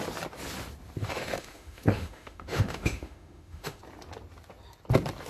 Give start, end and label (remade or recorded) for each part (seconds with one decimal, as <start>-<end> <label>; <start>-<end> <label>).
0.0-1.0 recorded; 1.0-3.8 remade; 3.8-5.3 recorded